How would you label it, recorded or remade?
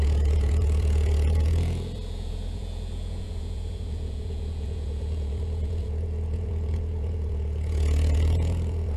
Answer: remade